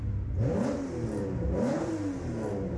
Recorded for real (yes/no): yes